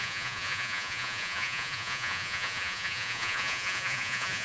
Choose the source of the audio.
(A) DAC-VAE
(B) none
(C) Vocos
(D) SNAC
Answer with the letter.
C